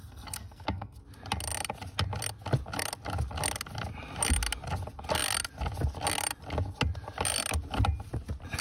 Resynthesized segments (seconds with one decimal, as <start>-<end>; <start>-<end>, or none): 0.0-1.0